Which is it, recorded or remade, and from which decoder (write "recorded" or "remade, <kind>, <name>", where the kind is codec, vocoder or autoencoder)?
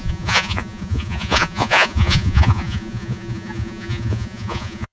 remade, vocoder, Vocos